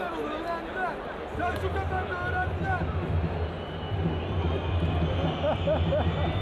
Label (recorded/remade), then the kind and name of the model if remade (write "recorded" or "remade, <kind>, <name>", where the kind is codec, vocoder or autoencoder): recorded